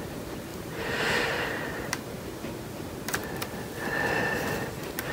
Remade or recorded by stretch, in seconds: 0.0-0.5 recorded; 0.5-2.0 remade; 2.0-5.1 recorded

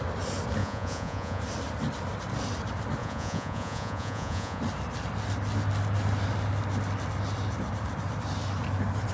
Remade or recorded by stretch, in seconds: 0.0-0.6 recorded; 0.6-1.4 remade; 1.4-3.0 recorded; 3.0-4.6 remade; 4.6-9.1 recorded

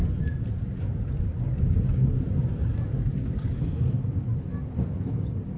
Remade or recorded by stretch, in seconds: 0.0-5.6 recorded

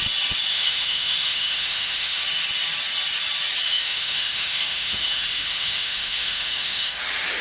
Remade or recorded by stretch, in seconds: 0.0-0.5 recorded; 0.5-2.2 remade; 2.2-3.7 recorded; 3.7-7.0 remade; 7.0-7.4 recorded

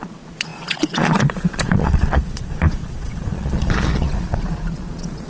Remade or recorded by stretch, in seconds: 0.0-5.3 remade